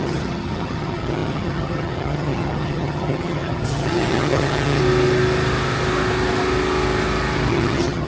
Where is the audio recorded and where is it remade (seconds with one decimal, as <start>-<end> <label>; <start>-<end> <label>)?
0.0-4.8 remade; 4.8-7.5 recorded; 7.5-8.1 remade